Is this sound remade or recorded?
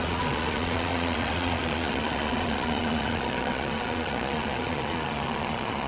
remade